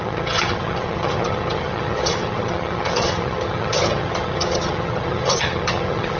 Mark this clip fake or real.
fake